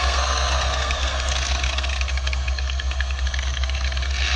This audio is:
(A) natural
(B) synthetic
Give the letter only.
B